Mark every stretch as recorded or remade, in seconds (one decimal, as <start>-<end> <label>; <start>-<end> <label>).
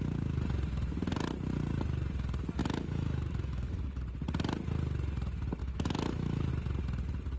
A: 0.0-2.6 recorded; 2.6-4.0 remade; 4.0-5.6 recorded; 5.6-6.5 remade; 6.5-7.4 recorded